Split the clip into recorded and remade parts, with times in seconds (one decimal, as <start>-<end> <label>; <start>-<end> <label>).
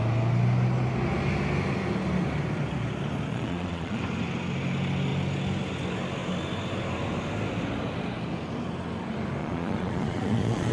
0.0-3.3 recorded; 3.3-4.0 remade; 4.0-9.4 recorded; 9.4-10.7 remade